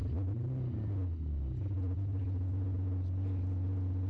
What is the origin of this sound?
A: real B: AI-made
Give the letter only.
A